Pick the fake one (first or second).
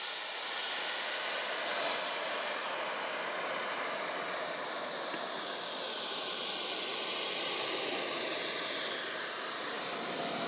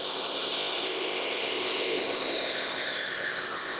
second